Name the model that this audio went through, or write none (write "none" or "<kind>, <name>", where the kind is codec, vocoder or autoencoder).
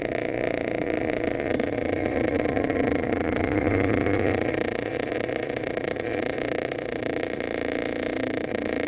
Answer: vocoder, Vocos